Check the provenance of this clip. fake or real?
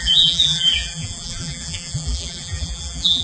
fake